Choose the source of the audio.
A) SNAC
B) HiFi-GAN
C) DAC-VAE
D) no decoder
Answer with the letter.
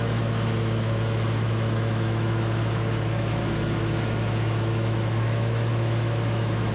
C